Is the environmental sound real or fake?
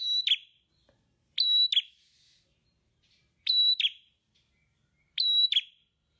real